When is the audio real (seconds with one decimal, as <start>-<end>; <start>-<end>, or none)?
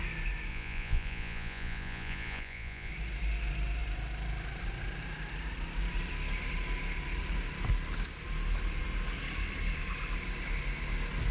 0.0-0.5; 2.9-11.3